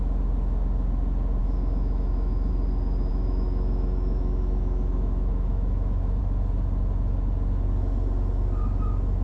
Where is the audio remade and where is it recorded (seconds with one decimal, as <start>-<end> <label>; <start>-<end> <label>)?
0.0-1.4 recorded; 1.4-2.5 remade; 2.5-3.1 recorded; 3.1-6.2 remade; 6.2-9.2 recorded